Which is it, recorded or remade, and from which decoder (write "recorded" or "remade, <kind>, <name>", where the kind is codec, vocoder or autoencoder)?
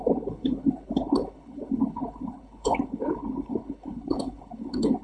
remade, codec, HILCodec